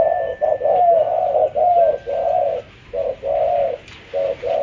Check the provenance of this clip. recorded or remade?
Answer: recorded